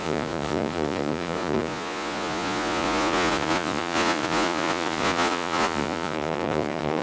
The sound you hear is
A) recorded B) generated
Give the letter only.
B